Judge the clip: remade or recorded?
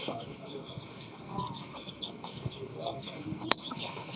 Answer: remade